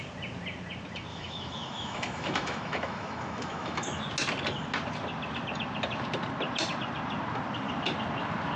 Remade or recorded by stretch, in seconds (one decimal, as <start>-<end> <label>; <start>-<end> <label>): 0.0-1.1 recorded; 1.1-4.0 remade; 4.0-8.6 recorded